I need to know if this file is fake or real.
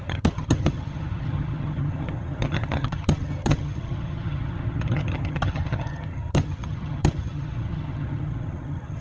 fake